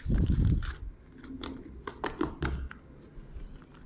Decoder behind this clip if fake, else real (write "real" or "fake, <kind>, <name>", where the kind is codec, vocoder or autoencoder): real